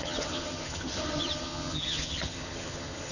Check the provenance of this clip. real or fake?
fake